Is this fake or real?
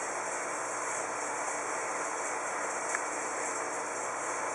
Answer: real